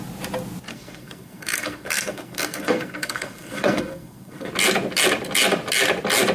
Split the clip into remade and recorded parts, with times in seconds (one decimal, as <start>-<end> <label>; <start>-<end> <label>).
0.0-0.7 recorded; 0.7-4.5 remade; 4.5-6.3 recorded